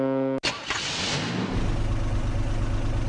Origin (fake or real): real